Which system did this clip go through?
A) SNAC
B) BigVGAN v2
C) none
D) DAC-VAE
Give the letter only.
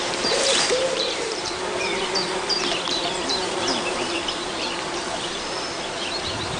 B